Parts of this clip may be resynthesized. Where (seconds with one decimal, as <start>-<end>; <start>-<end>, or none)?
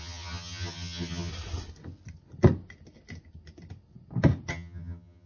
0.0-1.3; 4.5-5.3